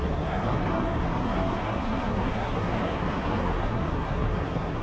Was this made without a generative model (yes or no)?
no